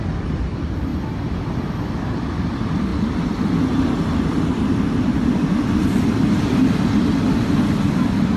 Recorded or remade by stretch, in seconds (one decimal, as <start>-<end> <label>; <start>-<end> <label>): 0.0-8.4 recorded